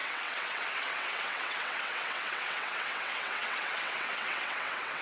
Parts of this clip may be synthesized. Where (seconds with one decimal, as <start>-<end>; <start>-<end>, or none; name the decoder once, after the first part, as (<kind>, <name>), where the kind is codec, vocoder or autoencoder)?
0.0-5.0 (vocoder, WaveNeXt)